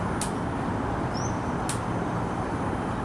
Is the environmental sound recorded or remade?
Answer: recorded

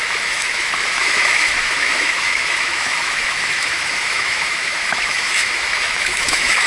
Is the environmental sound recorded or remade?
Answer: remade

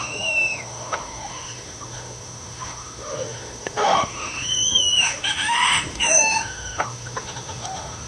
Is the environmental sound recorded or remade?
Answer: remade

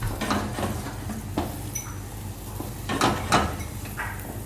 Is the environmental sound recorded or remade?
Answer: recorded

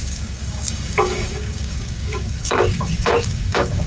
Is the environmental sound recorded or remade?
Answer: remade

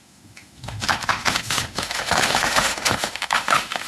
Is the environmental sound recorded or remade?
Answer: remade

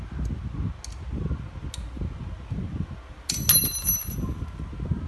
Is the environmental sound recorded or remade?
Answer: recorded